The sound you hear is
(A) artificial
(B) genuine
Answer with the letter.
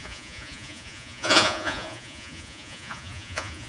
A